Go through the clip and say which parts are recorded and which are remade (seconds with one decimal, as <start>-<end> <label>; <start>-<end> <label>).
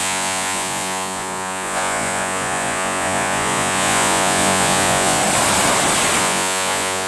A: 0.0-5.2 remade; 5.2-6.2 recorded; 6.2-7.1 remade